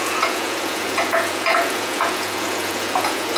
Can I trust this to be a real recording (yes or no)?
no